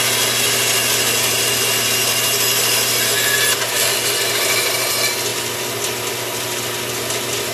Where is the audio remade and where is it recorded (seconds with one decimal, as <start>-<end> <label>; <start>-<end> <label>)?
0.0-7.5 recorded